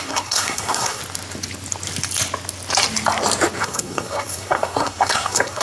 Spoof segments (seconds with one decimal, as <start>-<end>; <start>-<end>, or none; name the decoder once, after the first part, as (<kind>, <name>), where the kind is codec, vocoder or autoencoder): 0.0-1.0 (codec, SNAC); 3.6-5.6